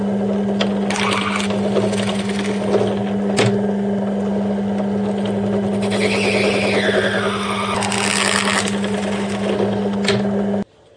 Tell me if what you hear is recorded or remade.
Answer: recorded